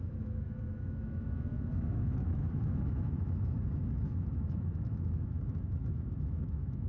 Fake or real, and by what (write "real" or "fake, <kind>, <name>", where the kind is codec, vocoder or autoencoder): fake, autoencoder, DAC-VAE